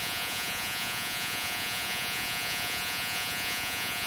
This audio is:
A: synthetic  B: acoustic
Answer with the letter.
A